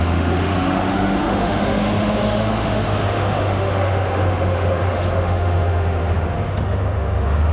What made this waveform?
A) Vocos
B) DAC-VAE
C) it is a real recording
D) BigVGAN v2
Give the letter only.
B